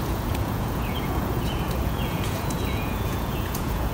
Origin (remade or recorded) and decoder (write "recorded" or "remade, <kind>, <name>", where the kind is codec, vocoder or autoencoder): remade, vocoder, Vocos